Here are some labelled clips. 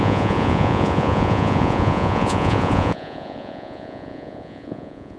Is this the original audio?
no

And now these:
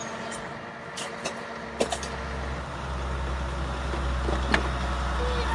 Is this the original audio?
yes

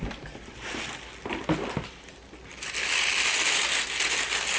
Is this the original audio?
yes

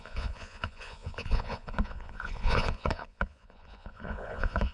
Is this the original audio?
no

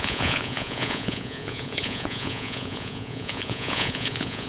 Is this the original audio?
no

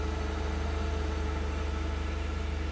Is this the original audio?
yes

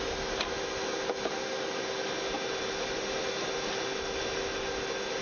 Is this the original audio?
yes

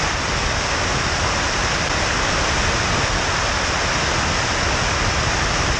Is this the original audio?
yes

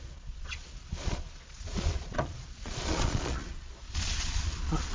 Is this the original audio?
no